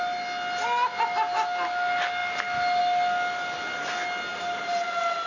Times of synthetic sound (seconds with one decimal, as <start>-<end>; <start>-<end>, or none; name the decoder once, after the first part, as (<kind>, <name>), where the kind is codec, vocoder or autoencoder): none